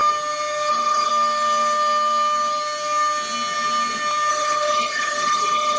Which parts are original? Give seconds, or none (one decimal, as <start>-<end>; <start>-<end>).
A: 0.0-0.7; 1.1-4.3